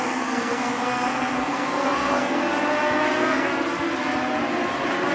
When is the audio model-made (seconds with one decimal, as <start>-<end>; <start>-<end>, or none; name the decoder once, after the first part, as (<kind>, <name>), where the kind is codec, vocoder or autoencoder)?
0.0-2.4 (codec, SNAC); 3.0-3.5